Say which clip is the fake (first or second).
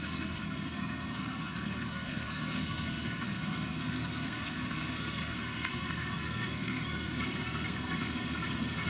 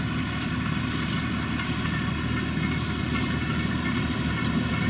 first